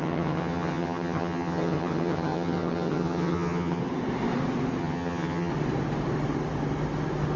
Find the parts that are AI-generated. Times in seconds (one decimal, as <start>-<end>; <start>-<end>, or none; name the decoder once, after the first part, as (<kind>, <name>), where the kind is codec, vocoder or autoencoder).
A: 0.0-3.8 (vocoder, HiFi-GAN); 4.8-5.5

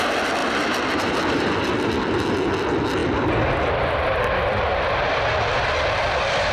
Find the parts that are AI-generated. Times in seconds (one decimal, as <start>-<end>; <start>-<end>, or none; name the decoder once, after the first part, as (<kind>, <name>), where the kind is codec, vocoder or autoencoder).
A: none

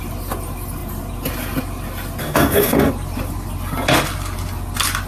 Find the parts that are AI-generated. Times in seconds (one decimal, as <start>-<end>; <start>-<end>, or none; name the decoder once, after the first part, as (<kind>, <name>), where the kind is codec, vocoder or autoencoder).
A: 2.2-2.9 (codec, DAC)

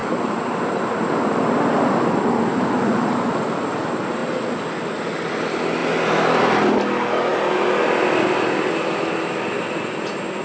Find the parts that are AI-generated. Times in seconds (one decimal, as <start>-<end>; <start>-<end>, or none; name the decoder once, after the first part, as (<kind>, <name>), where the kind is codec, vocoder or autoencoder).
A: none

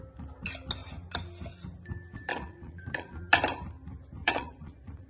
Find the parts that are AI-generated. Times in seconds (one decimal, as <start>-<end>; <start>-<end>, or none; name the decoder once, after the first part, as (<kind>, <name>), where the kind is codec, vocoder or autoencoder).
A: 2.3-3.3 (vocoder, Vocos); 4.2-5.1

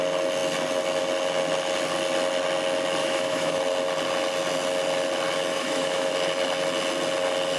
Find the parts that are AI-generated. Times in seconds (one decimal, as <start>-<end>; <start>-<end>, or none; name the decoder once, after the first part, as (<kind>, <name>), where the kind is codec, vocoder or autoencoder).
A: 3.0-3.6 (autoencoder, DAC-VAE); 5.5-6.1

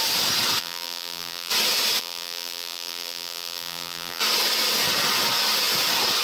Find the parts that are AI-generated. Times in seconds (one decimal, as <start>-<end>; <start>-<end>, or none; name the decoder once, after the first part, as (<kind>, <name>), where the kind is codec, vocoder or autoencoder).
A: 0.6-1.5 (vocoder, BigVGAN v2); 2.0-4.2